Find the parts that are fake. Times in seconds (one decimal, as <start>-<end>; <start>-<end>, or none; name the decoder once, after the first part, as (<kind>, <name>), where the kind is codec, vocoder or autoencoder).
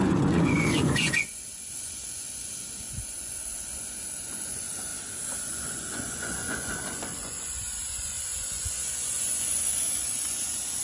0.0-4.9 (vocoder, Vocos); 5.5-10.8